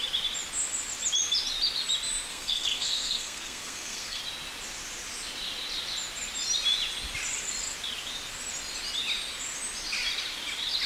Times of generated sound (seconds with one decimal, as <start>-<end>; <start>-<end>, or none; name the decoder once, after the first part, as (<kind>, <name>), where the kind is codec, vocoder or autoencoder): 2.3-4.2 (codec, SNAC)